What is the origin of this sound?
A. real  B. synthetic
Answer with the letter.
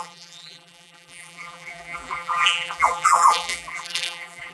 B